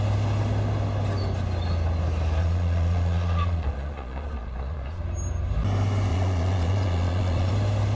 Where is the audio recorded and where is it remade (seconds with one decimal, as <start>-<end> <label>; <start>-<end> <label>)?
0.0-2.4 recorded; 2.4-5.0 remade; 5.0-6.1 recorded; 6.1-7.5 remade; 7.5-8.0 recorded